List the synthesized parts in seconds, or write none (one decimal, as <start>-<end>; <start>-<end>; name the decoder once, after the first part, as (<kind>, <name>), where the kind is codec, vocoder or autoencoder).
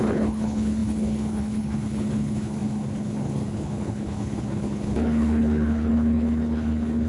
0.0-7.1 (codec, HILCodec)